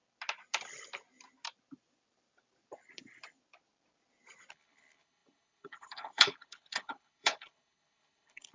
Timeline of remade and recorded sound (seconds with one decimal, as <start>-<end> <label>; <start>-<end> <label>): 0.0-4.5 recorded; 4.5-8.5 remade